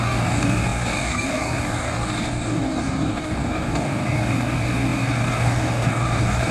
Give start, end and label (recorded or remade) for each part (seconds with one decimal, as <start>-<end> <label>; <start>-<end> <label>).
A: 0.0-6.5 remade